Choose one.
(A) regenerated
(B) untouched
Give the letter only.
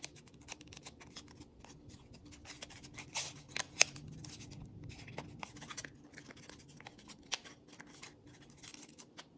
B